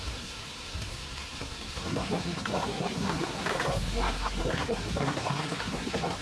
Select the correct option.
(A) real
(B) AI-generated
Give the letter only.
B